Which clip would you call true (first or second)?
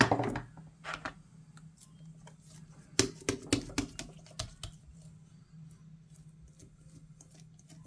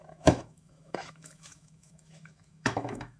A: first